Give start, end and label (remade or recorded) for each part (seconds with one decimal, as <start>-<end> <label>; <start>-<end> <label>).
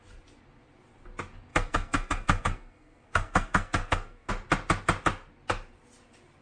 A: 0.0-1.5 recorded; 1.5-4.3 remade; 4.3-6.4 recorded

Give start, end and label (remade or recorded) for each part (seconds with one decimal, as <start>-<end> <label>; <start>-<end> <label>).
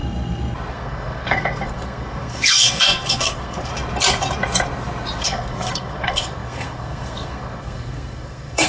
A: 0.0-0.7 recorded; 0.7-3.7 remade; 3.7-5.2 recorded; 5.2-8.7 remade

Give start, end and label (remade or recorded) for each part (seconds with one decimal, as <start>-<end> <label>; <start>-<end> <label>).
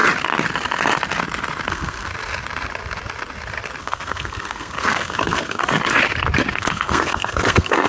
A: 0.0-1.7 recorded; 1.7-2.1 remade; 2.1-3.8 recorded; 3.8-5.6 remade; 5.6-6.5 recorded; 6.5-7.9 remade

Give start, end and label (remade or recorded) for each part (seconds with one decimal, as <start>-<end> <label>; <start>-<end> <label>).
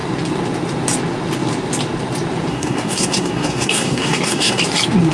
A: 0.0-2.5 recorded; 2.5-4.6 remade; 4.6-5.1 recorded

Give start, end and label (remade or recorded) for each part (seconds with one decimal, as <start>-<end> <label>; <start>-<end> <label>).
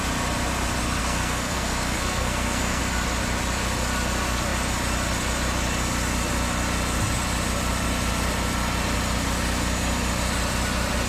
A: 0.0-1.0 recorded; 1.0-2.8 remade; 2.8-11.1 recorded